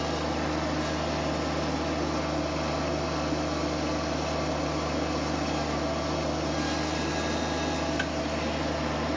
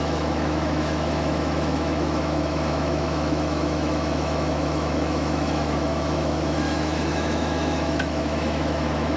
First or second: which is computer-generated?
second